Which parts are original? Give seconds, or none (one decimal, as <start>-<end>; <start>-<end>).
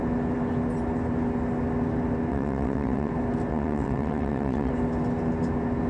0.0-2.3; 3.1-3.5; 4.7-5.9